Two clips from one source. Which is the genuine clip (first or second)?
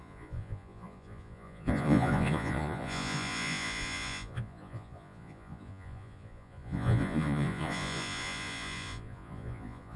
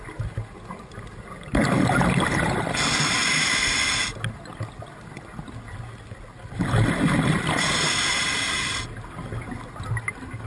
second